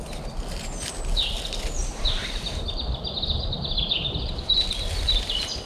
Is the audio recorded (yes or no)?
yes